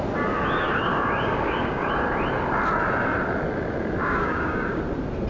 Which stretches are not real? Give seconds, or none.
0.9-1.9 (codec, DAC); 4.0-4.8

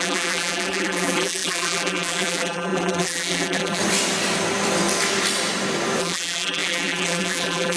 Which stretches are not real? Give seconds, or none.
0.0-3.8 (vocoder, BigVGAN v2); 6.0-7.8

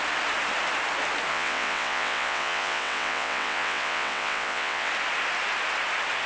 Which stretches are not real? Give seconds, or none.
1.3-4.9 (vocoder, WaveNeXt)

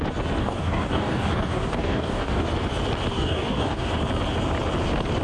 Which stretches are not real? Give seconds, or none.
0.4-2.5 (codec, DAC); 3.1-3.9